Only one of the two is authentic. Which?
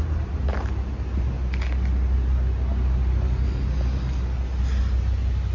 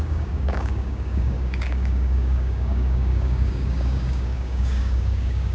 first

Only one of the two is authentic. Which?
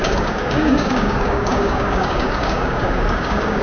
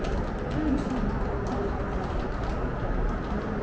second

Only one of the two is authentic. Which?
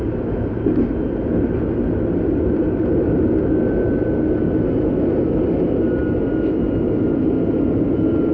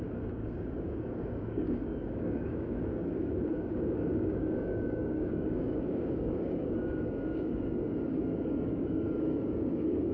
first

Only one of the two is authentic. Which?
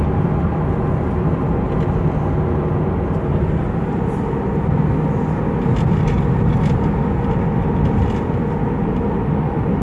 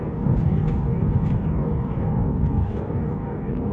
first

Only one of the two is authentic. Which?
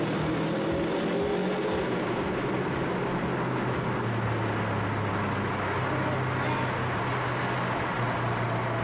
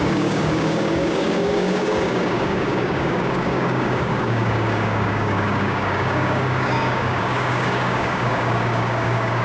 first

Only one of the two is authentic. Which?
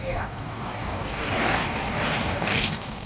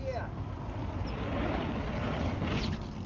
second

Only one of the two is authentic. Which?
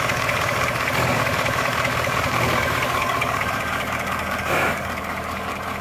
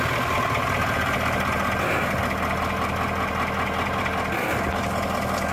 second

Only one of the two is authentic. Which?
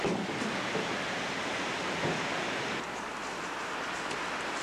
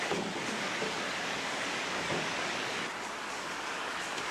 first